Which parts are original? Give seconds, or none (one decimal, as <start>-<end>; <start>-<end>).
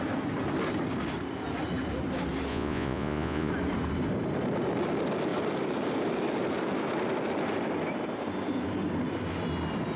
0.0-2.5; 3.5-10.0